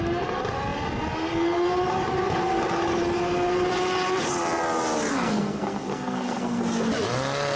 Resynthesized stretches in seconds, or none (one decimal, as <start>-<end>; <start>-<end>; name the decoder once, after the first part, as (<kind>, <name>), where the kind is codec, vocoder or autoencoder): 5.1-6.6 (codec, SNAC)